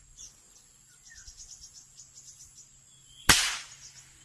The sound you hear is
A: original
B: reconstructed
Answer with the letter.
A